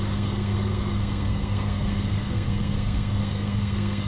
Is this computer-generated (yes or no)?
yes